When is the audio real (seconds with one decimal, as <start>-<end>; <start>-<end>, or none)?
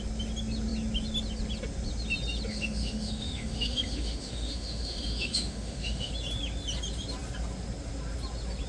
0.0-2.5; 6.1-8.7